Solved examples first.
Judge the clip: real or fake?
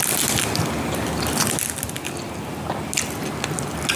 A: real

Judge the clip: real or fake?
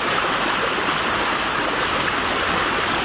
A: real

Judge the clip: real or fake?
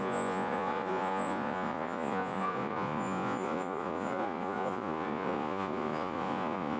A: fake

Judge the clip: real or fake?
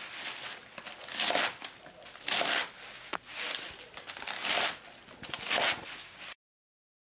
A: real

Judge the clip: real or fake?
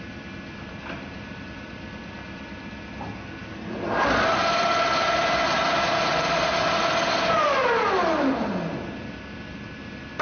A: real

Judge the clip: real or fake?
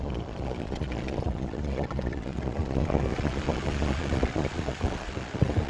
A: fake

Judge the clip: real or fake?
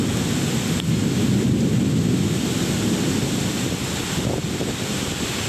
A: real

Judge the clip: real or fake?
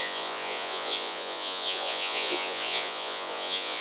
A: fake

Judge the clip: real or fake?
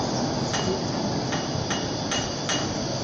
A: real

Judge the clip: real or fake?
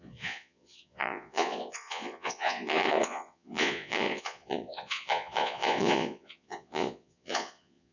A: fake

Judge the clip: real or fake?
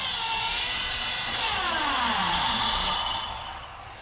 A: fake